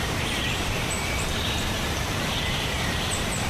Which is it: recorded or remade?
remade